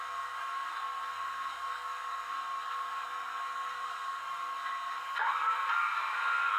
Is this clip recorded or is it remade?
remade